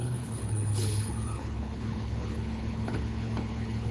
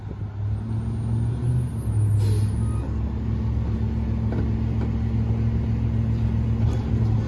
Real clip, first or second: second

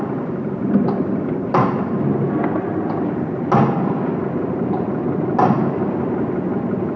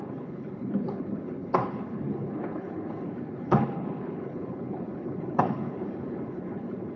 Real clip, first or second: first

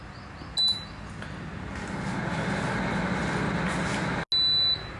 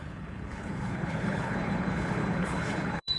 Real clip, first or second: first